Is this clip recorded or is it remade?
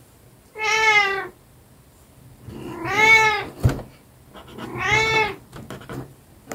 recorded